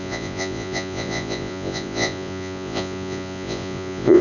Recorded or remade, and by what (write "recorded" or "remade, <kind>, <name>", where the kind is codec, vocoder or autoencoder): remade, vocoder, Vocos